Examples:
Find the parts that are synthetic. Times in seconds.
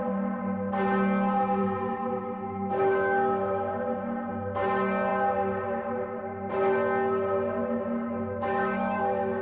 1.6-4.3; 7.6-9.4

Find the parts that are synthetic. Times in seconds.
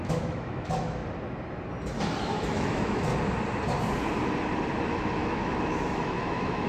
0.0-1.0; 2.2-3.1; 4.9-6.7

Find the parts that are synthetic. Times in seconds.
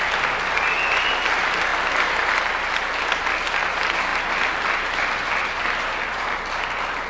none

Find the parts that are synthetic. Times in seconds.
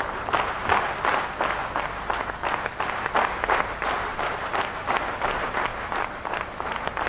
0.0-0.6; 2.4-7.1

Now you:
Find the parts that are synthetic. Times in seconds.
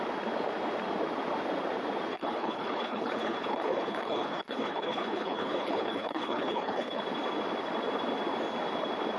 2.1-7.0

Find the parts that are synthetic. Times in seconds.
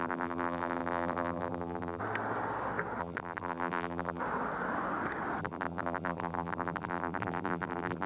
0.0-2.0; 3.0-4.2; 5.4-8.1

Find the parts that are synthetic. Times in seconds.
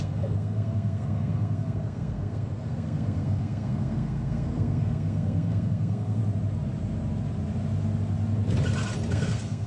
0.0-6.2; 9.1-9.7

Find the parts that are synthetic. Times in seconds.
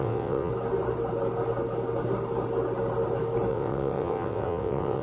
0.0-0.5; 3.5-5.0